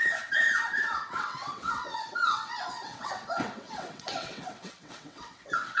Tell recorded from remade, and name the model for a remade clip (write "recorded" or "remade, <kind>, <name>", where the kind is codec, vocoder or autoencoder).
remade, vocoder, WaveNeXt